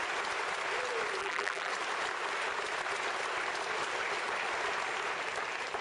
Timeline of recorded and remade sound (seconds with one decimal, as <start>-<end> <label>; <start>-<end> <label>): 0.0-1.2 recorded; 1.2-1.7 remade; 1.7-5.8 recorded